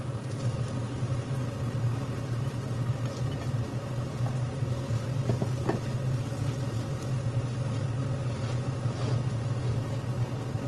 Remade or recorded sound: recorded